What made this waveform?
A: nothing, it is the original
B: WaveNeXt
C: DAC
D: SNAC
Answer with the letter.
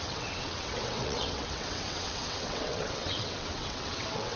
B